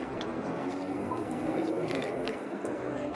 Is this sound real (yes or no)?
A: no